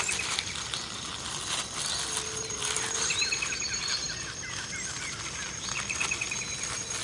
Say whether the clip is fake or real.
real